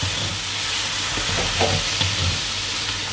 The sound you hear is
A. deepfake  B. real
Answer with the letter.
B